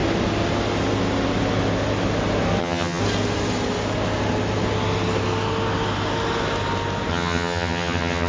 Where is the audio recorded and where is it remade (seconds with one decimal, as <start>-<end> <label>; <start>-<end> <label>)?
0.0-2.6 recorded; 2.6-3.0 remade; 3.0-7.1 recorded; 7.1-8.3 remade